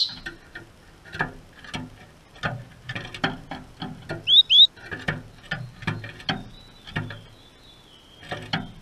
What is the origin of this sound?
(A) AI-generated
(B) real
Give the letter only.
B